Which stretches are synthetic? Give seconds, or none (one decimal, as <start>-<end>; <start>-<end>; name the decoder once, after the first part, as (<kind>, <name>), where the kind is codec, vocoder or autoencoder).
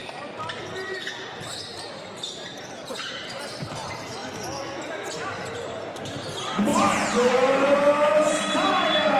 2.0-4.2 (vocoder, BigVGAN v2); 5.1-6.7; 7.3-9.2